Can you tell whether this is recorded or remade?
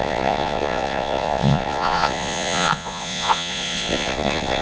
remade